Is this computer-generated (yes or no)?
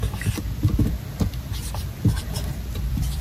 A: yes